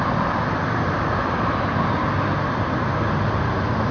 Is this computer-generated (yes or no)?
no